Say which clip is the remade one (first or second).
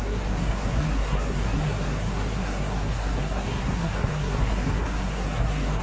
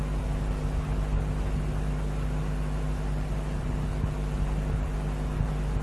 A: first